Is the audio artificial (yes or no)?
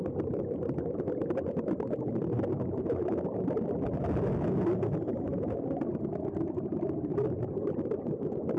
no